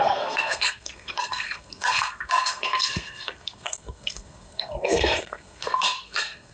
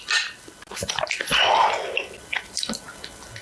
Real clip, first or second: second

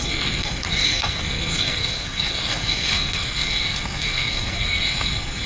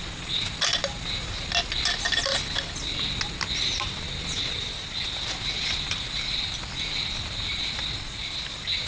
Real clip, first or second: second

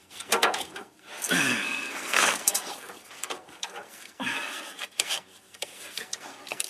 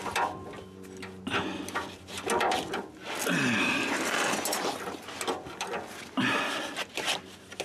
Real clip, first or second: second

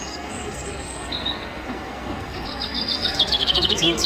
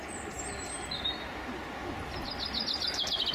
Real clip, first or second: second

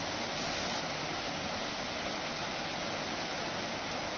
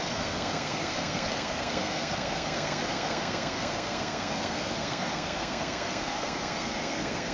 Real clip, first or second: first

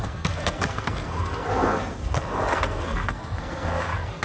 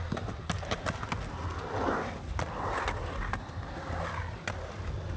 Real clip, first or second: second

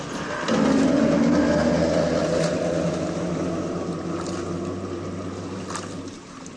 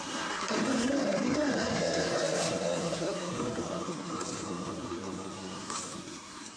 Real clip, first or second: first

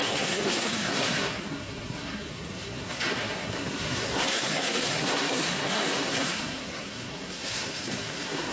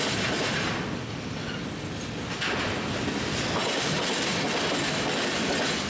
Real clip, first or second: second